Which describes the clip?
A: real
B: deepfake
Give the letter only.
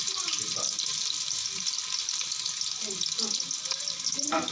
A